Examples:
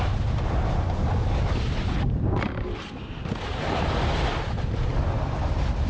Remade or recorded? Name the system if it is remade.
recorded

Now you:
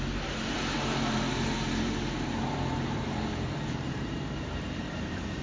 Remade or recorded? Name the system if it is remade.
remade, vocoder, BigVGAN v2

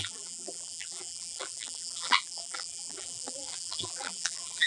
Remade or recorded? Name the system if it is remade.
remade, vocoder, BigVGAN v2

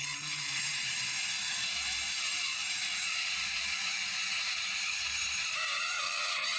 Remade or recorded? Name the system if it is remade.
remade, vocoder, BigVGAN v2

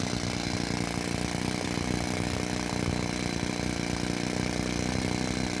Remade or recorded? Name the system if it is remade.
recorded